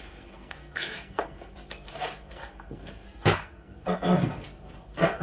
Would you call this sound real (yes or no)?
no